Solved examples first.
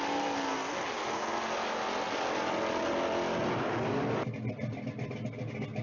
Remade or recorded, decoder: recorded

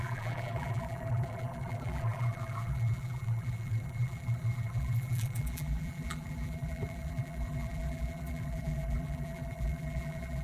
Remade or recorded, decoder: remade, vocoder, BigVGAN v2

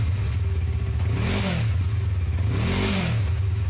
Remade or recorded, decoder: recorded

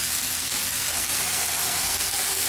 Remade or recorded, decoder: remade, codec, SNAC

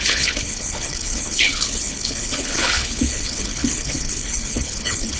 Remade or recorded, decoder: remade, codec, HILCodec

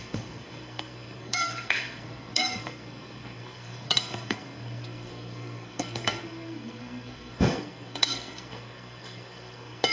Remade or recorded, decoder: remade, codec, SNAC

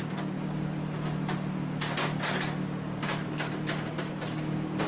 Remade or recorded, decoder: recorded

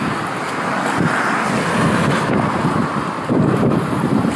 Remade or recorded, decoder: remade, vocoder, BigVGAN v2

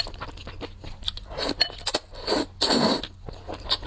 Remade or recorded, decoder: recorded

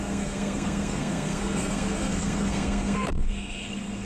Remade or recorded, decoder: remade, codec, SNAC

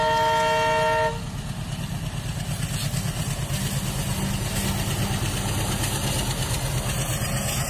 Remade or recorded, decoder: recorded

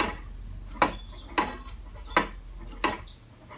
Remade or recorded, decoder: recorded